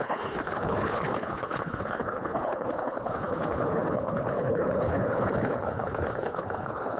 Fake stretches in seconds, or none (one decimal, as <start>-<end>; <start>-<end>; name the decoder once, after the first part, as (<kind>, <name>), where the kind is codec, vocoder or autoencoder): 0.0-7.0 (codec, HILCodec)